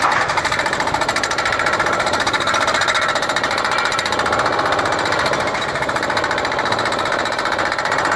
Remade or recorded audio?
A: recorded